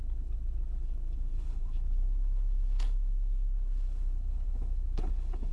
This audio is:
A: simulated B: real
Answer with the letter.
A